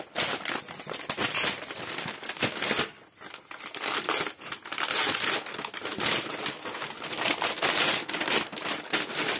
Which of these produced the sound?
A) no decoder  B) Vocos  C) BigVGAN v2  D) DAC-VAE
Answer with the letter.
A